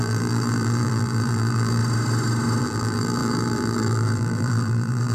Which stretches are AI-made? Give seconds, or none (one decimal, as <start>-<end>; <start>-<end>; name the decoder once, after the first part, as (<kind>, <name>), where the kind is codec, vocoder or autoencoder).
0.0-1.8 (vocoder, BigVGAN v2); 2.6-5.1